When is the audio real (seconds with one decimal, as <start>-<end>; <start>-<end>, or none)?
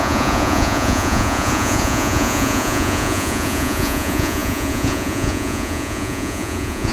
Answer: none